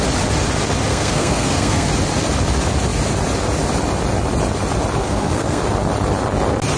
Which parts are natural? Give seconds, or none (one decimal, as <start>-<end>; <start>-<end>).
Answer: 0.0-0.9; 1.9-5.0; 5.6-6.8